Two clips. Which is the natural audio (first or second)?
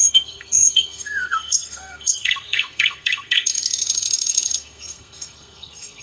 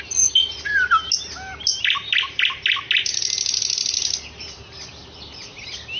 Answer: second